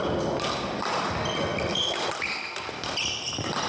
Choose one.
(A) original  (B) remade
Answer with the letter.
A